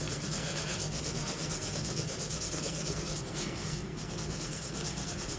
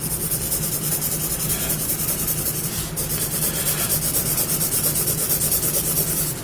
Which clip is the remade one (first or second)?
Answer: first